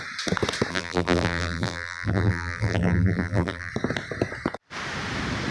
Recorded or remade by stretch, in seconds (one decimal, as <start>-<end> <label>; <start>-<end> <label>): 0.0-0.7 recorded; 0.7-3.7 remade; 3.7-5.5 recorded